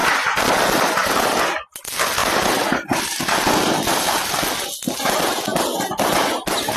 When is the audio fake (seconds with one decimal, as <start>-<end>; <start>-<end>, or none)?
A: 0.0-1.7; 2.2-4.5; 5.5-6.8